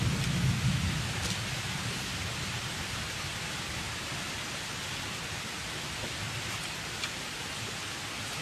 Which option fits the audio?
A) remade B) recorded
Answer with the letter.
B